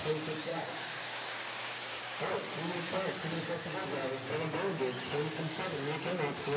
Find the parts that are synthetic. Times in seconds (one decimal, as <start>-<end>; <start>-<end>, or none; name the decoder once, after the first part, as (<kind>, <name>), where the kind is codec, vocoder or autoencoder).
0.5-2.3 (codec, DAC)